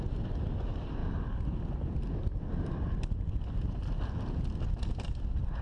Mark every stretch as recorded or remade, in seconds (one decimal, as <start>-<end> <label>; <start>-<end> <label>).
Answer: 0.0-5.6 recorded